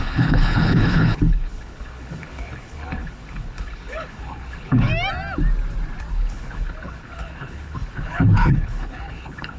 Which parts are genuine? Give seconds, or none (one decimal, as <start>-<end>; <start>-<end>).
4.9-6.1